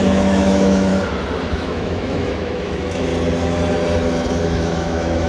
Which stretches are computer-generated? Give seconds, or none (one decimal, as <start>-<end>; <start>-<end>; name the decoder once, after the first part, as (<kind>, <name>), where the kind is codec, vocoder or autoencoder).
0.0-0.9 (autoencoder, DAC-VAE); 1.5-3.1; 4.4-5.3